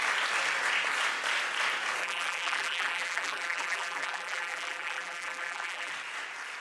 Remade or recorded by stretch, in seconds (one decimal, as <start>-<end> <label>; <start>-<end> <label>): 0.0-2.0 recorded; 2.0-5.9 remade; 5.9-6.6 recorded